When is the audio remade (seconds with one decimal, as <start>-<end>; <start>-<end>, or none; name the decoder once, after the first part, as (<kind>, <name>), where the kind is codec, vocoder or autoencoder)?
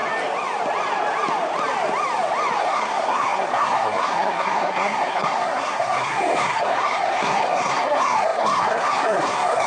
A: 2.6-9.7 (codec, SNAC)